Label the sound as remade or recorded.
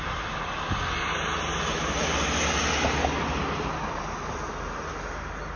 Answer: recorded